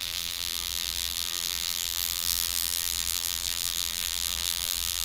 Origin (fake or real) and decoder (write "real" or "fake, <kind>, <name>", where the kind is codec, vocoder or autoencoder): fake, vocoder, BigVGAN v2